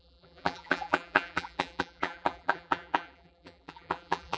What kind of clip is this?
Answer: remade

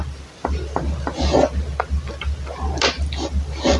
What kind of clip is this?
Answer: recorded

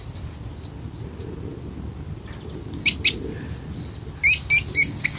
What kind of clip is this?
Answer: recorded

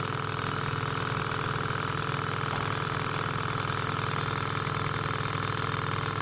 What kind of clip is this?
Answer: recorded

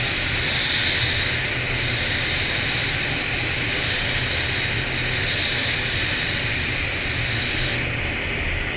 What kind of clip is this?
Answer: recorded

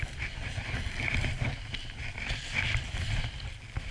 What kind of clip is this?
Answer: recorded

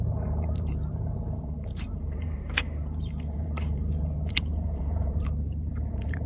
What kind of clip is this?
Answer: remade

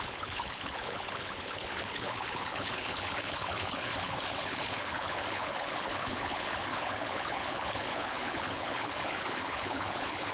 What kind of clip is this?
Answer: remade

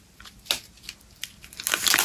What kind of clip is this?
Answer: recorded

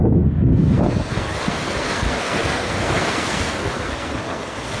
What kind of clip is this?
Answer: remade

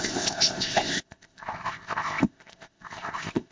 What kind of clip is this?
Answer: remade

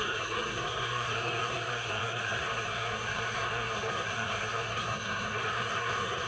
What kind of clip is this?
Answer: remade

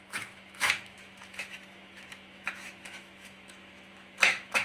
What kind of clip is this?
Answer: remade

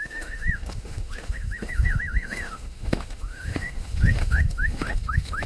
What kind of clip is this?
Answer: remade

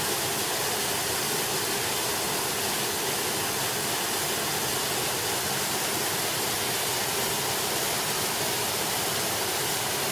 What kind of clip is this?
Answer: recorded